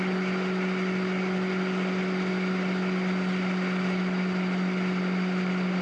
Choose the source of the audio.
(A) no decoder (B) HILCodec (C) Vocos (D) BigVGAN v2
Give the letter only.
A